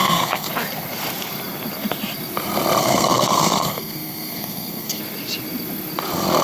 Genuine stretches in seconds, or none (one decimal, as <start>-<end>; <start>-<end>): 0.5-2.8; 5.0-6.4